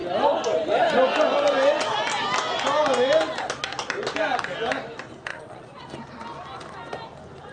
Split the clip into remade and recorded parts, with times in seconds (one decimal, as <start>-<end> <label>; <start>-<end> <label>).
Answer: 0.0-5.3 recorded; 5.3-5.8 remade; 5.8-7.5 recorded